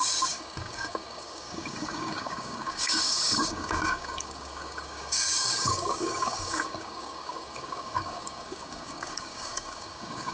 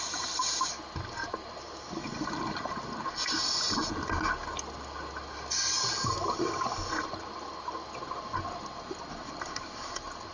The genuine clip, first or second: second